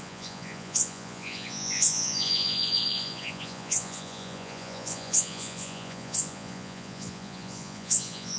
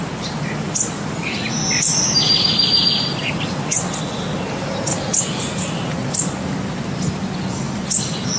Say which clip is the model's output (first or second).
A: first